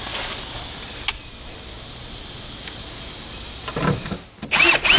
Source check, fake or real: real